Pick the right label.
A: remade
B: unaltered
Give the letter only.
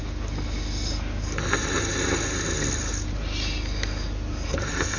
B